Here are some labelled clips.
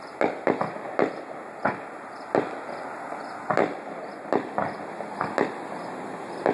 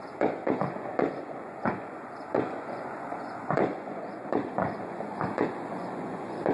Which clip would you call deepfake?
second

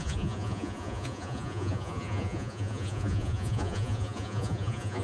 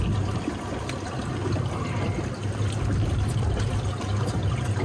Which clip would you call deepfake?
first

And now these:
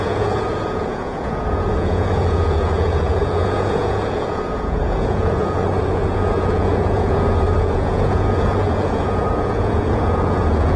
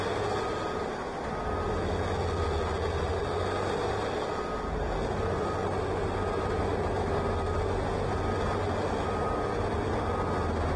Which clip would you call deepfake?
first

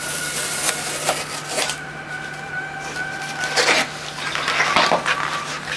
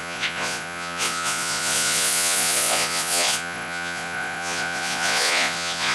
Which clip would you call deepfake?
second